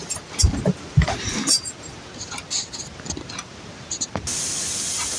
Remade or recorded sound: recorded